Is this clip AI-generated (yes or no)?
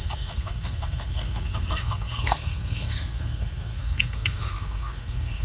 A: yes